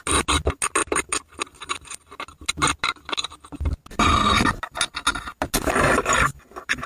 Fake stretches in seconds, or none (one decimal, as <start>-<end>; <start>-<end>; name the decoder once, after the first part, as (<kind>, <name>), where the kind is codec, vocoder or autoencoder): none